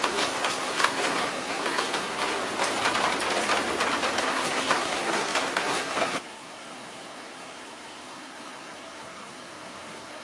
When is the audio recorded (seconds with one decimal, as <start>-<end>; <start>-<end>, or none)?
2.4-4.2